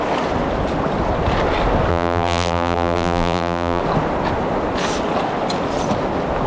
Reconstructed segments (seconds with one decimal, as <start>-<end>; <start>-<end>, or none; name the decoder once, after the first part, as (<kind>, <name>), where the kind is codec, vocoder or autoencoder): 1.9-3.8 (vocoder, BigVGAN v2)